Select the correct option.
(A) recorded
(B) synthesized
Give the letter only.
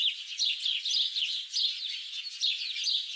A